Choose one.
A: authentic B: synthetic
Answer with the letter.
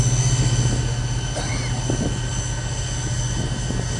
A